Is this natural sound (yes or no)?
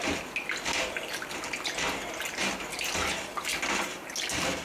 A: yes